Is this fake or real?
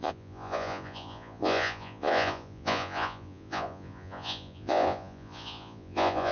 fake